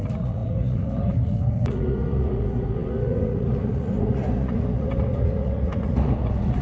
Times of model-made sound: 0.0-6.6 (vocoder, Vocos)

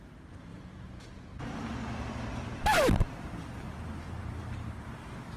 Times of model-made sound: 0.5-1.6 (vocoder, Vocos)

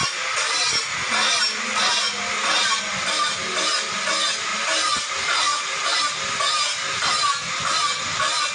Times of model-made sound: none

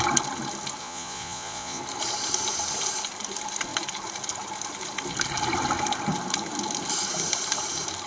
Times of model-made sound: 0.8-1.8 (vocoder, Vocos)

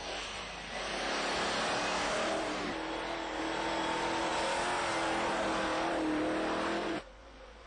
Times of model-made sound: 6.8-7.7 (vocoder, Vocos)

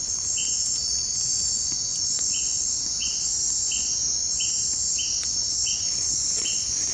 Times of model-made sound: 0.0-4.0 (vocoder, Vocos); 5.5-6.9

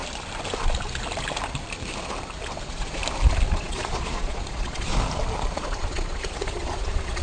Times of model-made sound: 2.6-3.0 (vocoder, Vocos); 3.5-4.9; 5.5-7.2

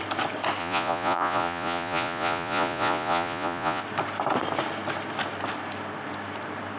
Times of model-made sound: 0.6-3.8 (vocoder, Vocos)